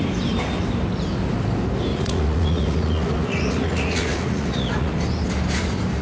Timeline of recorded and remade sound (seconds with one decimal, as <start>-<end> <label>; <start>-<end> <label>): 0.0-1.9 recorded; 1.9-4.9 remade; 4.9-6.0 recorded